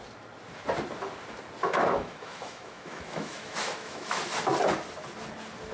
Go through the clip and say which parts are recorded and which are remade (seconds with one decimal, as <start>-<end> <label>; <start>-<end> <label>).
0.0-1.6 recorded; 1.6-4.2 remade; 4.2-5.7 recorded